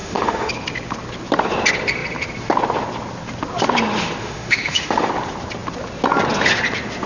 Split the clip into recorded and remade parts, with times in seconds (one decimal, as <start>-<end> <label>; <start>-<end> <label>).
0.0-0.5 remade; 0.5-4.2 recorded; 4.2-5.1 remade; 5.1-7.1 recorded